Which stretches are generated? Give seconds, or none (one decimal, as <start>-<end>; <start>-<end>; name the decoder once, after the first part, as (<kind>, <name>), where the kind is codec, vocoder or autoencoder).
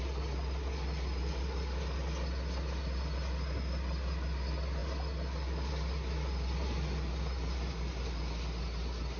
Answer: none